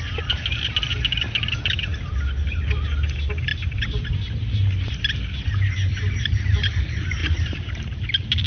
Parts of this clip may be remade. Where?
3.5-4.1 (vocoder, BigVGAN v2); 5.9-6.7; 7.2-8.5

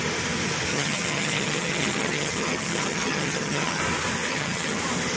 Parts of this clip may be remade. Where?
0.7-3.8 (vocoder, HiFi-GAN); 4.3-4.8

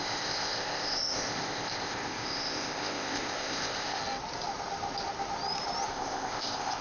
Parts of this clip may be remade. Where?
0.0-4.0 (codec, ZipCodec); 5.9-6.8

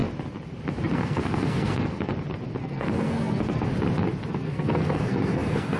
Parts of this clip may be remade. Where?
0.8-2.1 (codec, SNAC); 2.6-3.7; 4.3-5.8